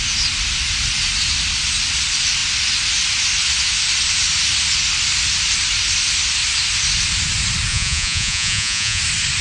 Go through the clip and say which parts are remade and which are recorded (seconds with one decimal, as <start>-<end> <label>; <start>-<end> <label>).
0.0-7.7 recorded; 7.7-9.0 remade; 9.0-9.4 recorded